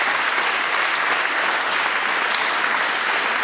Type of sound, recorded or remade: recorded